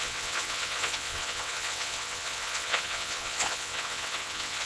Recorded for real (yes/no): no